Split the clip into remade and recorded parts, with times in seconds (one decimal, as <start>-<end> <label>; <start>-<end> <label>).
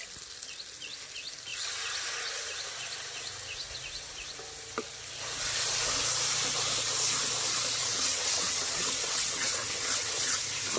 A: 0.0-7.8 recorded; 7.8-10.4 remade; 10.4-10.8 recorded